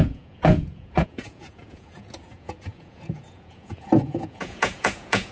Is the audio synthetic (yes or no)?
yes